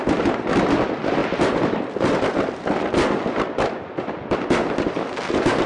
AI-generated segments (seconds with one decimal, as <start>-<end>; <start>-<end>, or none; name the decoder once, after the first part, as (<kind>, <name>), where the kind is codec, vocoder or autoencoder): none